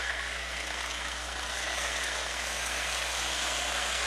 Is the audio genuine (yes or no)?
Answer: no